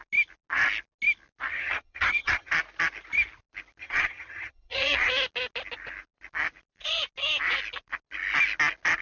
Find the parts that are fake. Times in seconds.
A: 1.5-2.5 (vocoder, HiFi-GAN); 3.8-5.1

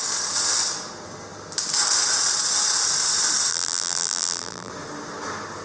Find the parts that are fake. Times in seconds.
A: 3.5-4.7 (vocoder, BigVGAN v2)

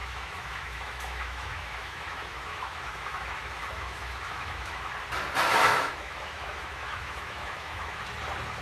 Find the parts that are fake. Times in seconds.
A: 0.0-4.9 (autoencoder, DAC-VAE); 5.7-8.0

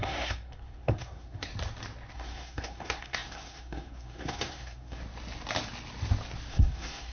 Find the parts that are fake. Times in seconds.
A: 0.0-1.5 (codec, SNAC); 2.1-5.0; 6.5-7.1

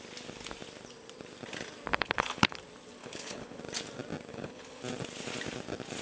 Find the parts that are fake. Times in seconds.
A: 1.9-2.6 (codec, HILCodec); 3.0-3.6; 4.3-4.8

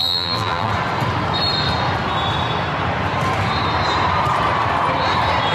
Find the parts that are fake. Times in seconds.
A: 0.0-0.7 (vocoder, BigVGAN v2)

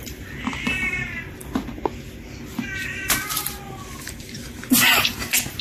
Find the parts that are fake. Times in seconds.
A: 0.0-1.4 (vocoder, BigVGAN v2); 4.0-5.6

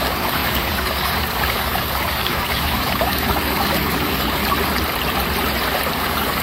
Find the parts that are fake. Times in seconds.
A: 0.0-4.4 (codec, DAC); 6.0-6.4